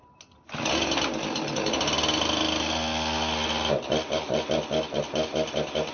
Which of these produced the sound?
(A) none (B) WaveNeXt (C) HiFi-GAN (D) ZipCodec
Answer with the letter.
A